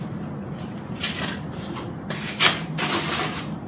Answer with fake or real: real